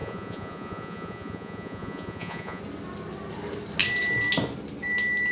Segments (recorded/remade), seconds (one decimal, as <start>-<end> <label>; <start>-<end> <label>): 0.0-2.6 remade; 2.6-5.3 recorded